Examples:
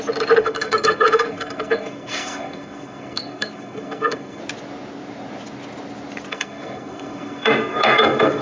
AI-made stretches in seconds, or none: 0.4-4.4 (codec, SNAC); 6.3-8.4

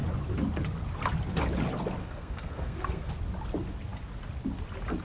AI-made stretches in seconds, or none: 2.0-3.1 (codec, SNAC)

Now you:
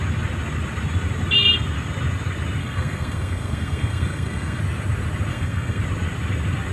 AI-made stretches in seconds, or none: 2.6-4.6 (codec, SNAC); 5.3-5.8

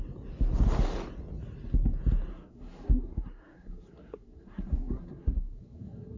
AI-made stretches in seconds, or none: 2.3-6.2 (codec, SNAC)

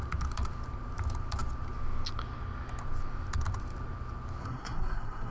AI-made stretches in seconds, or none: 4.4-5.3 (codec, SNAC)